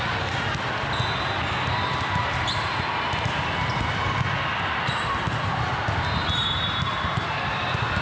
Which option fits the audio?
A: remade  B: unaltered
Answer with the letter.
B